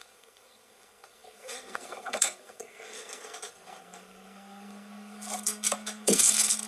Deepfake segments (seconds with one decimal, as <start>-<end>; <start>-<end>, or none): 0.0-6.7